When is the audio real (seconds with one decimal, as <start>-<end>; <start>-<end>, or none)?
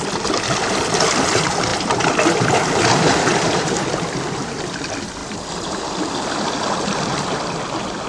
0.0-1.7; 2.6-3.3; 3.9-5.2; 5.8-8.1